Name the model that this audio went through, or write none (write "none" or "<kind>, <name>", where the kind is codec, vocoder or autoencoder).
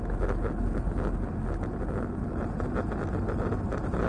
none